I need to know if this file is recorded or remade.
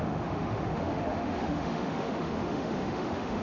remade